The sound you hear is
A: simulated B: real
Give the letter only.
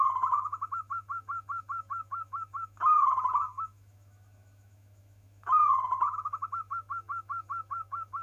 A